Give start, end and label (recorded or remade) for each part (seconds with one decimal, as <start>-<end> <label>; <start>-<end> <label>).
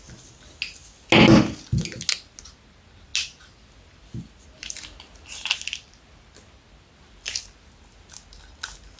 0.0-9.0 recorded